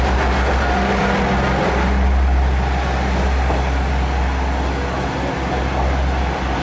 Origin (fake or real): real